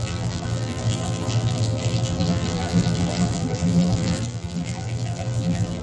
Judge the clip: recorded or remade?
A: remade